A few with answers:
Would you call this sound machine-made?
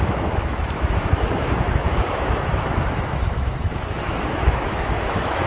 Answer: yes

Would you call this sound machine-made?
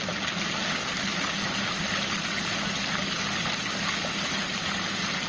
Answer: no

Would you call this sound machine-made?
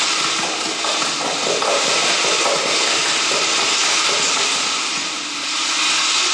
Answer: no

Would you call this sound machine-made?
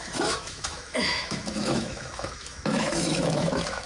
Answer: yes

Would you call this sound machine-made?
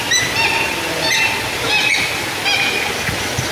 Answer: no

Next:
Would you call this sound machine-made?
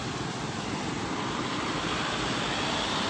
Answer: no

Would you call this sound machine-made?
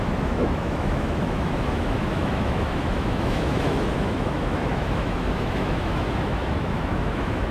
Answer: yes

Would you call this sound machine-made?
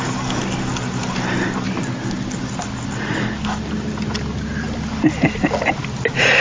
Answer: no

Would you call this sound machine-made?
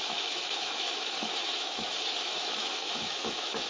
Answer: yes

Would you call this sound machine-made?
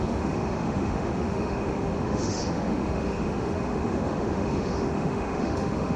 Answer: yes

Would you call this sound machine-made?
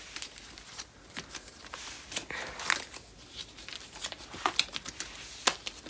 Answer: no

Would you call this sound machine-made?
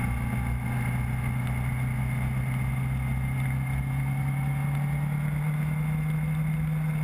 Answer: no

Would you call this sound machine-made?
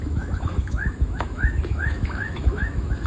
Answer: yes